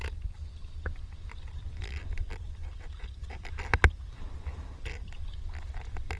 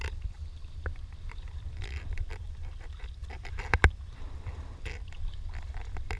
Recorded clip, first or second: first